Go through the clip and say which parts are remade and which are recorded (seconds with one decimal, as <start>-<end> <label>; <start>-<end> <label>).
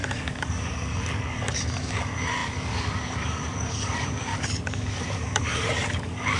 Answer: 0.0-6.4 remade